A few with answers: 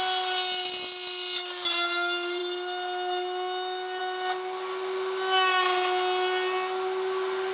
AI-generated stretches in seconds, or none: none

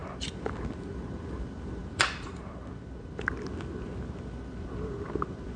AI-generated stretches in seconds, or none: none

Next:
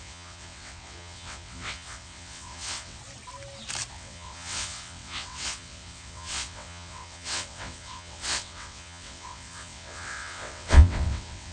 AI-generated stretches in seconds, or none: 0.0-3.0 (vocoder, WaveNeXt); 3.9-11.5